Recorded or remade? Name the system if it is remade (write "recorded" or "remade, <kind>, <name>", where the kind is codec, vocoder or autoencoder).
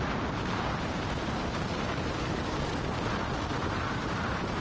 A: remade, vocoder, BigVGAN v2